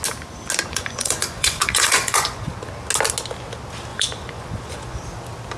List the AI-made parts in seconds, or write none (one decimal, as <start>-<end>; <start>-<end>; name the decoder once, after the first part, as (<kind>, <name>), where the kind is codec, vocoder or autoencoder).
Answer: 0.7-2.5 (vocoder, Vocos); 3.9-5.0